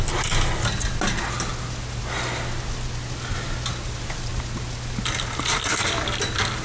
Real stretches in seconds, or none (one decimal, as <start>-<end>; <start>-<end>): 0.0-6.6